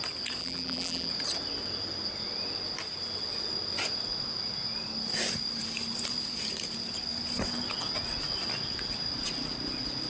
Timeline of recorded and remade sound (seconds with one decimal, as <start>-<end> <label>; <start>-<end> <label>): 0.0-0.4 recorded; 0.4-1.1 remade; 1.1-10.1 recorded